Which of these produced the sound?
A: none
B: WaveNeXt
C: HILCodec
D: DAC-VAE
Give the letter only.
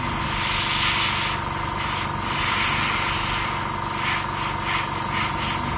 A